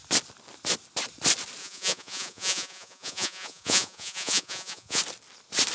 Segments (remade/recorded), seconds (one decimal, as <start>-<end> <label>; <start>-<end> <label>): 0.0-1.6 recorded; 1.6-5.0 remade; 5.0-5.7 recorded